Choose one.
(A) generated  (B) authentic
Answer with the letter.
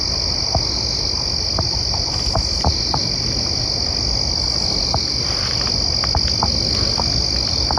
B